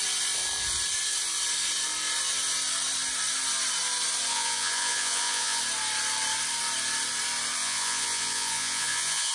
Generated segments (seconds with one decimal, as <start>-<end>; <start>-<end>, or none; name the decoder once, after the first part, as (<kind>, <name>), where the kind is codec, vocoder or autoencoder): 4.3-5.6 (vocoder, Vocos); 7.6-9.3